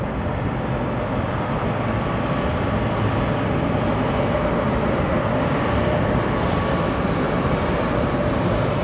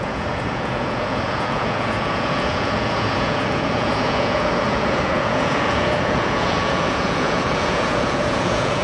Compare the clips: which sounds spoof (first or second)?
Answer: second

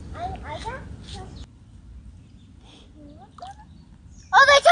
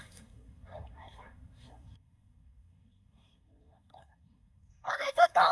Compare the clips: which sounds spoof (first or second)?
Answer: second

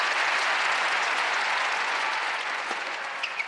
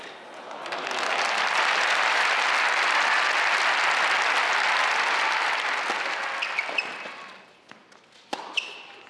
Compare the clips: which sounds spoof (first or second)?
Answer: first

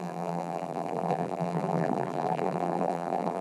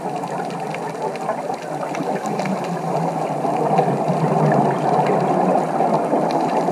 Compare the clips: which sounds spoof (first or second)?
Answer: first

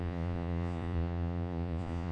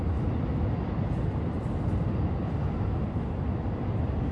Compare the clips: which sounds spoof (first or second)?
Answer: first